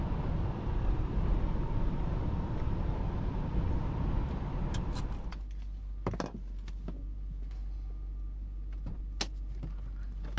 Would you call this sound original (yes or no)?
yes